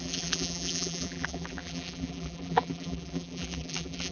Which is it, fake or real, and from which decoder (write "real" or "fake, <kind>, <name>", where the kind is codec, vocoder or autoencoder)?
fake, vocoder, BigVGAN v2